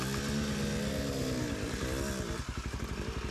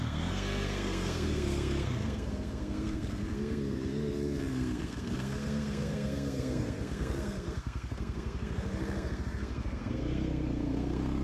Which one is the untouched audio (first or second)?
first